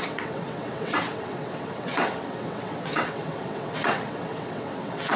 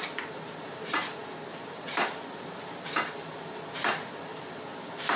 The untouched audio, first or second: second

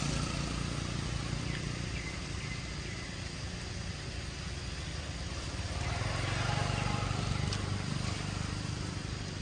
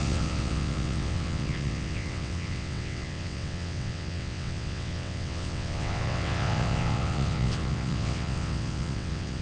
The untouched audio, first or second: first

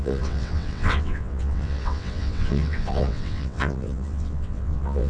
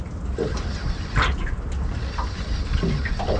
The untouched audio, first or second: second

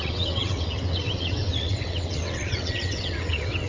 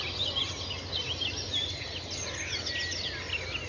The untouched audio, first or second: second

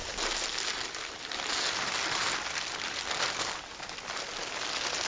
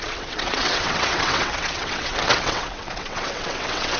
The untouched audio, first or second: first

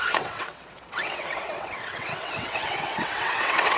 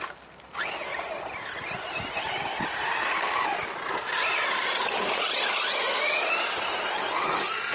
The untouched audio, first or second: second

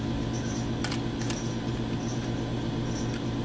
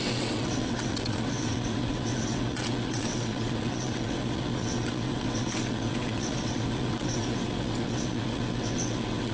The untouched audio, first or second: first